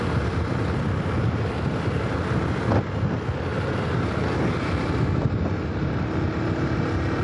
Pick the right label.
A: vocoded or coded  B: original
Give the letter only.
B